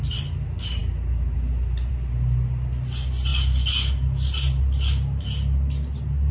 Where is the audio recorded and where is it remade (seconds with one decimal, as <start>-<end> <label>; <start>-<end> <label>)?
0.0-6.3 recorded